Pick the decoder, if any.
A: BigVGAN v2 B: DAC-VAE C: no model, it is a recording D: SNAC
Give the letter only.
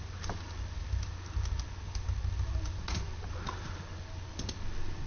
C